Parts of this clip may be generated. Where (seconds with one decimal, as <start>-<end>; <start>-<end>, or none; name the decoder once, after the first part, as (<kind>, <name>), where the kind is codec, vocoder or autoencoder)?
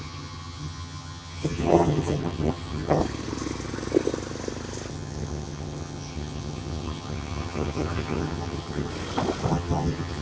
0.0-3.0 (vocoder, HiFi-GAN); 4.9-8.9; 9.5-10.2